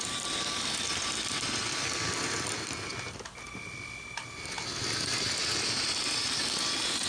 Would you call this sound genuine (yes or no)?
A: yes